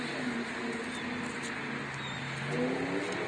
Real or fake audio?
real